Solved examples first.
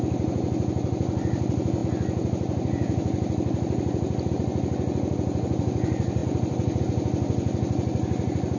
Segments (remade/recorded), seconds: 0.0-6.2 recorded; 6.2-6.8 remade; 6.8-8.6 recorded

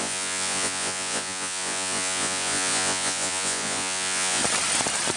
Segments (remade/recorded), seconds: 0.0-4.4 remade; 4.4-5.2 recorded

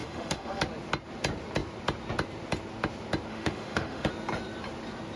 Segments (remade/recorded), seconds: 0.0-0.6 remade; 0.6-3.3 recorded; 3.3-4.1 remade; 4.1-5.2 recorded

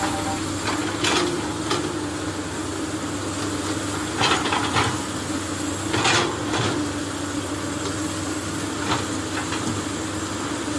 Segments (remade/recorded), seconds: 0.0-10.8 recorded

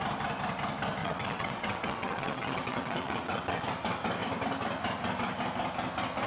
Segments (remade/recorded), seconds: 0.0-1.0 recorded; 1.0-3.7 remade; 3.7-6.3 recorded